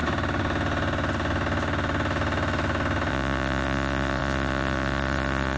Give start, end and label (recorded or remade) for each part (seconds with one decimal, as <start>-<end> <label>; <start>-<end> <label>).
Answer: 0.0-3.1 recorded; 3.1-5.6 remade